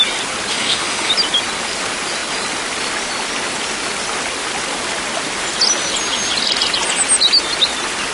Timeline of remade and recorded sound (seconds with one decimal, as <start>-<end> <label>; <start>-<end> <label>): 0.0-0.5 recorded; 0.5-1.1 remade; 1.1-8.1 recorded